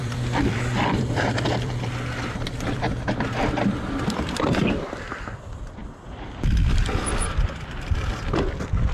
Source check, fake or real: fake